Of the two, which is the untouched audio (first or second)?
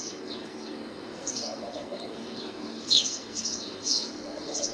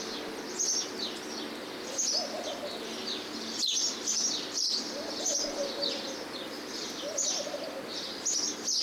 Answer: second